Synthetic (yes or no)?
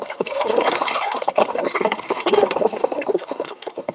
yes